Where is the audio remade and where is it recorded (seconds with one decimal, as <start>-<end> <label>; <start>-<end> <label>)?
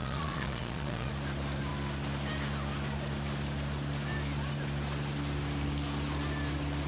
0.0-1.1 remade; 1.1-6.9 recorded